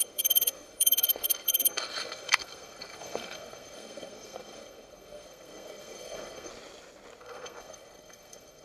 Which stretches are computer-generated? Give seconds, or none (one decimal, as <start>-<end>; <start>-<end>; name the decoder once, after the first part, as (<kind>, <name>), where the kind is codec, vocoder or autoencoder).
0.0-6.5 (codec, SNAC); 7.2-8.6